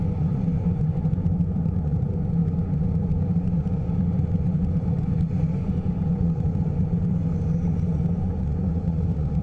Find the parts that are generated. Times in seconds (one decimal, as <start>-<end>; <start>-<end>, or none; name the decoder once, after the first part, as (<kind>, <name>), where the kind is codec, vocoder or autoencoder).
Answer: 0.0-7.2 (vocoder, Vocos); 8.0-9.4